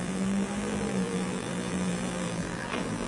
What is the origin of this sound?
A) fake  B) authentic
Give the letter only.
A